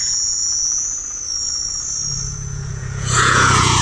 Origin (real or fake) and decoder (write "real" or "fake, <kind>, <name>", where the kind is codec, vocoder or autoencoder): fake, vocoder, Vocos